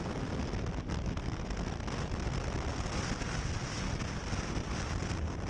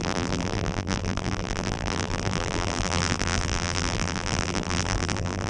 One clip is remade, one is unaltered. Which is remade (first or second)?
second